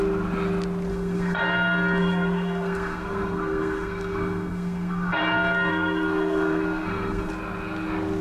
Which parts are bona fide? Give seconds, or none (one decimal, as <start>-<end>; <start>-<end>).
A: 0.0-0.9; 1.4-2.0; 5.2-5.7; 7.3-8.2